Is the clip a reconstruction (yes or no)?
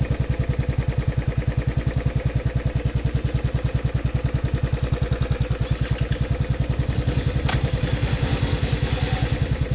no